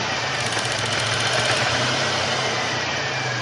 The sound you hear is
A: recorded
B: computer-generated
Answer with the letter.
B